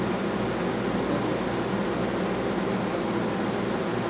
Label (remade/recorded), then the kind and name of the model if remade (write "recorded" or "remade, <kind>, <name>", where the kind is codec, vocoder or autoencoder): recorded